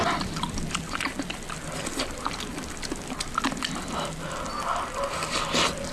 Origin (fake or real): real